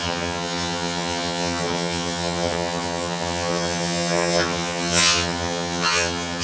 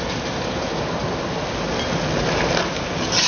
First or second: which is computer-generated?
first